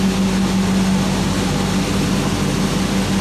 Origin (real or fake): real